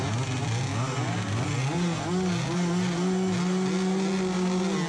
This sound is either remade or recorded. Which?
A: recorded